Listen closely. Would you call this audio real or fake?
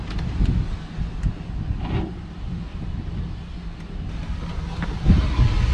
real